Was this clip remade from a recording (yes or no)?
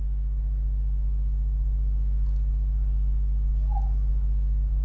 no